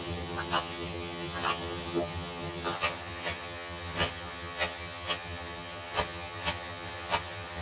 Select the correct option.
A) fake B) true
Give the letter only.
A